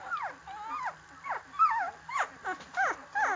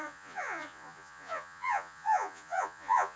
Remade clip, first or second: second